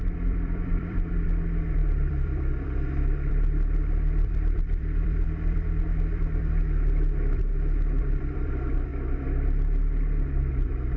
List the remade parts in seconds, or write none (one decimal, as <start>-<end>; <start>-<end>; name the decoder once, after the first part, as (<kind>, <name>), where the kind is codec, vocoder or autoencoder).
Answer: 0.0-7.4 (vocoder, BigVGAN v2); 8.0-8.9; 10.5-11.0